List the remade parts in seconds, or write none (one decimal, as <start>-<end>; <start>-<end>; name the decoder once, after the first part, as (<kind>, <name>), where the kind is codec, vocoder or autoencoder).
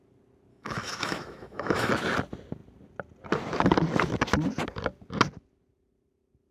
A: 0.5-1.9 (autoencoder, DAC-VAE)